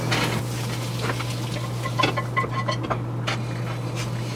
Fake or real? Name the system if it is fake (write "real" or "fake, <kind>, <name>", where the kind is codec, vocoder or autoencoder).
real